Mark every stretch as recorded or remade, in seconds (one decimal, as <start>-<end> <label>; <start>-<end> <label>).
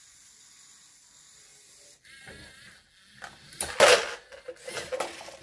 0.0-5.4 recorded